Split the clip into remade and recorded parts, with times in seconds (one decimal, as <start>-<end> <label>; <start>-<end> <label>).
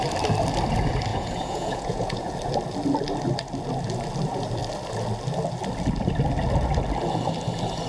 0.0-1.1 recorded; 1.1-2.3 remade; 2.3-7.9 recorded